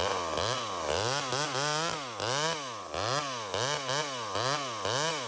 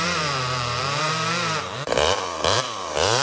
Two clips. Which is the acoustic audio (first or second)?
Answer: first